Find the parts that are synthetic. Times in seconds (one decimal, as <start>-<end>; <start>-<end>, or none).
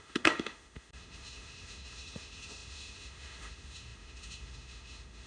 0.0-5.3